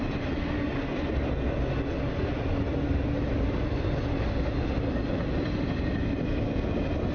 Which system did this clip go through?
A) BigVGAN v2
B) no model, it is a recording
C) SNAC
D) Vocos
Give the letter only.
B